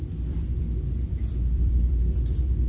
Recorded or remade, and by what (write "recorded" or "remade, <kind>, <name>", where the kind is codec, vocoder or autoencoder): remade, vocoder, BigVGAN v2